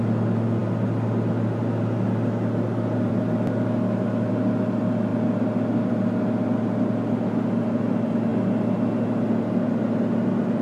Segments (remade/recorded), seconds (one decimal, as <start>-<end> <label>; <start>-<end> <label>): 0.0-10.6 recorded